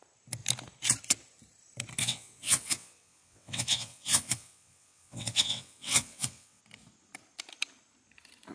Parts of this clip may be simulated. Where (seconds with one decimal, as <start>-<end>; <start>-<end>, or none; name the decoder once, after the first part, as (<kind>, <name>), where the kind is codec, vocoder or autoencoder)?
2.0-6.6 (vocoder, WaveNeXt)